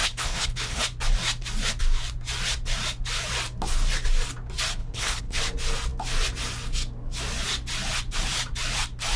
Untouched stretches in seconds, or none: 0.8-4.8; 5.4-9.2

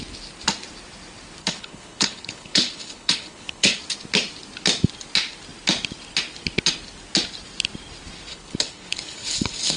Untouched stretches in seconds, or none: 0.0-1.4; 3.8-8.3

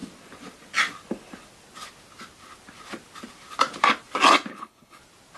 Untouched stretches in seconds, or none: 0.0-4.5; 5.0-5.4

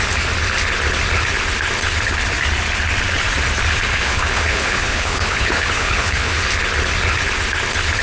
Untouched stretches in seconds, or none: 0.0-3.9; 6.5-8.0

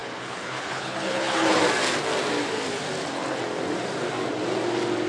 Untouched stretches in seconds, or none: 1.6-5.1

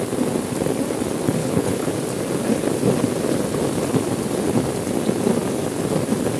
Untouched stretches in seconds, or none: 0.0-1.4; 1.9-6.4

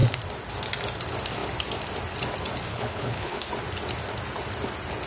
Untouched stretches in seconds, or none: 0.0-2.7; 3.5-5.1